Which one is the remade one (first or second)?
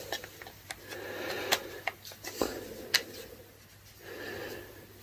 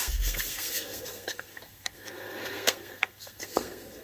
second